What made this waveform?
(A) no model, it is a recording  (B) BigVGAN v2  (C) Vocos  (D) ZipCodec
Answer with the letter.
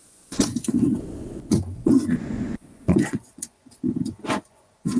C